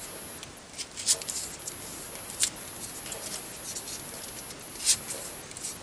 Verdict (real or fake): real